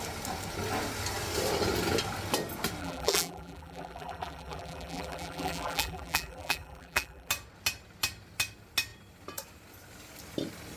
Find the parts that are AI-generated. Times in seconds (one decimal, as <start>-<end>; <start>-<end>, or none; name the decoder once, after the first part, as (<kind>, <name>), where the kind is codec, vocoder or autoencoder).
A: 2.8-7.3 (vocoder, BigVGAN v2)